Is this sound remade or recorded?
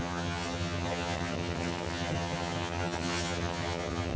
remade